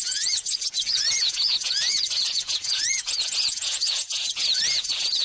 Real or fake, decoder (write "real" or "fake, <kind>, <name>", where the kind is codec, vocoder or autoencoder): fake, vocoder, Vocos